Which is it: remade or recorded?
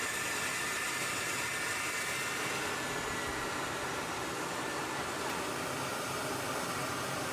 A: recorded